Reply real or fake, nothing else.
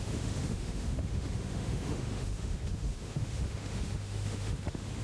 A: fake